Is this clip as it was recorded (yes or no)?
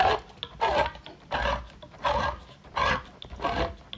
yes